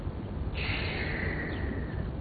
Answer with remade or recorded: recorded